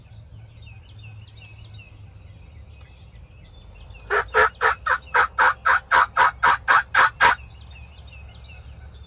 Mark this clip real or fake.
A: real